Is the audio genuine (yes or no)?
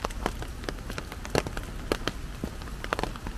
yes